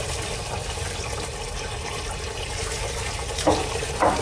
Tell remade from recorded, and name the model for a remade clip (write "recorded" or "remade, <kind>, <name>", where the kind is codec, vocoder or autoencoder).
recorded